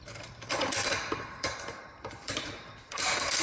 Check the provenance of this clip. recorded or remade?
remade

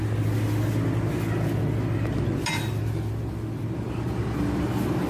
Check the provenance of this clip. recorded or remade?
recorded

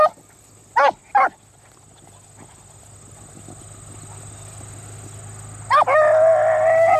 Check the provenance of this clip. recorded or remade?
recorded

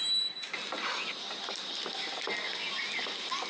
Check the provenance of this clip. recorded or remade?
recorded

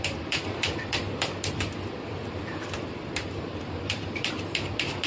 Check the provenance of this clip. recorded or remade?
remade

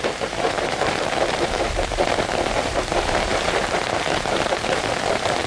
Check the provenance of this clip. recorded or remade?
remade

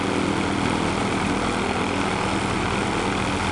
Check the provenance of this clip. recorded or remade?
recorded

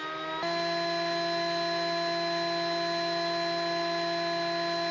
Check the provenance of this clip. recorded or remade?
recorded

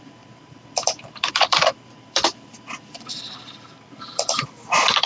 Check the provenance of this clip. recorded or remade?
remade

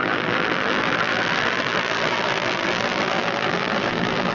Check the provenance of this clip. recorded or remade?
remade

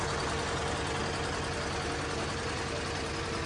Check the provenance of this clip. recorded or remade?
recorded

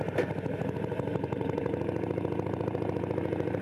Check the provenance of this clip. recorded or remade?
remade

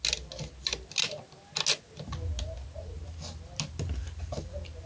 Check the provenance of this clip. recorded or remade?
recorded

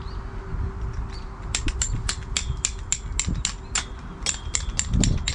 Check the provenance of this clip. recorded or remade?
recorded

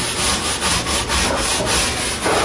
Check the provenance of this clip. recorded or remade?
recorded